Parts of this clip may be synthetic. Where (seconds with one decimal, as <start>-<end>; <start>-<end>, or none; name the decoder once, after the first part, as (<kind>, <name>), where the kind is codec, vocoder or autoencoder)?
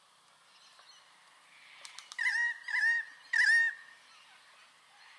none